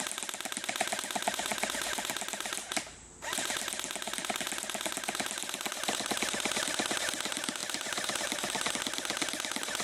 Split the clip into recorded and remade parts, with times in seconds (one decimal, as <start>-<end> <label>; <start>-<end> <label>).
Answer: 0.0-7.6 recorded; 7.6-8.7 remade; 8.7-9.8 recorded